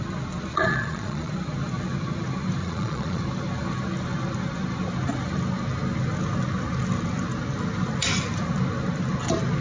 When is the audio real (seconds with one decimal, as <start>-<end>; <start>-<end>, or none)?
0.0-0.5; 1.3-2.6; 3.2-9.6